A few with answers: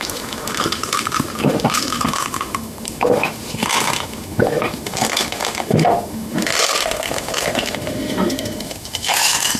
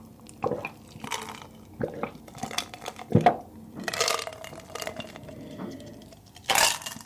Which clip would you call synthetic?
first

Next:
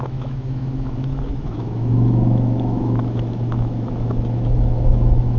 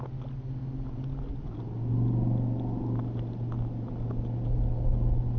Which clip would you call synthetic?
first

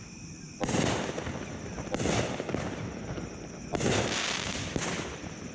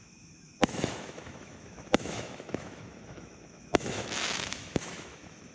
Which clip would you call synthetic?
second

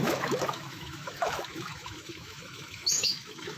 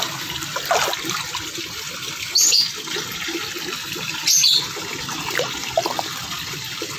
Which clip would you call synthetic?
first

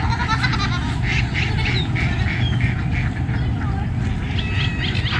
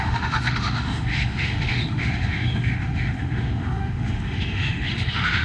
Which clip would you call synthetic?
second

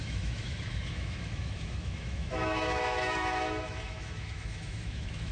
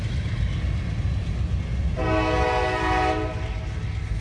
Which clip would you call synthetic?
first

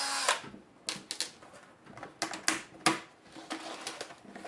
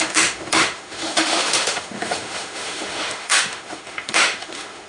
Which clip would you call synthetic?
second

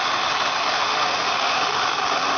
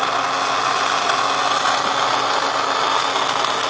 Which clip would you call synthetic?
first